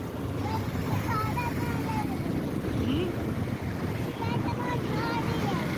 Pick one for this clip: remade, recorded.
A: recorded